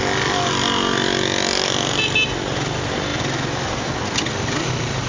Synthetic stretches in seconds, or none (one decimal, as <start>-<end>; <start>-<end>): none

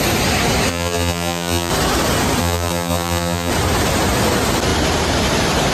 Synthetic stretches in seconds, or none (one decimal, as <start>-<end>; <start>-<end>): 0.7-1.7; 2.4-3.5

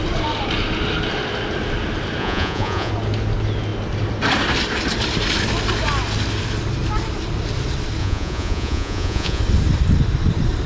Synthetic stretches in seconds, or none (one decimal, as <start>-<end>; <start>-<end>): 2.2-2.9; 8.0-9.4

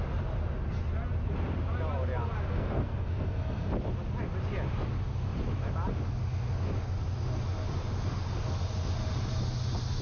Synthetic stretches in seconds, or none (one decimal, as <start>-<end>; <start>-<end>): 2.5-3.7

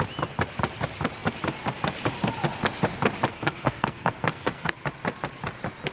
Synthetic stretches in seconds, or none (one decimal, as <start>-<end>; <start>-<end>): 3.3-4.7

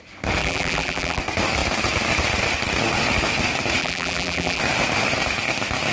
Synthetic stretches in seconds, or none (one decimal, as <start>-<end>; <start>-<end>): 0.4-1.2; 3.8-4.6

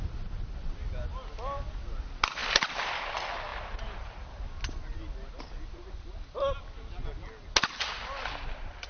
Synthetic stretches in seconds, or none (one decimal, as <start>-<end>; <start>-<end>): none